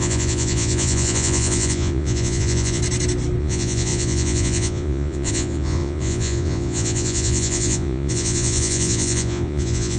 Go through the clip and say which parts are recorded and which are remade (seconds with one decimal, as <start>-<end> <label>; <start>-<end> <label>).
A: 0.0-2.8 remade; 2.8-3.4 recorded; 3.4-10.0 remade